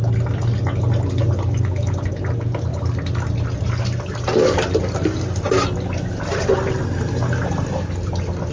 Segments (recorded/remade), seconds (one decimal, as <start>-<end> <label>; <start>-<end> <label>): 0.0-8.5 recorded